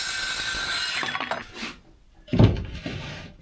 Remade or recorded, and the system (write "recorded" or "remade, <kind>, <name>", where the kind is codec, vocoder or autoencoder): recorded